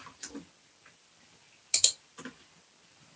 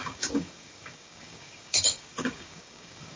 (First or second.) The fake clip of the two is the second